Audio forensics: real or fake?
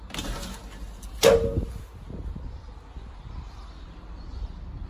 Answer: real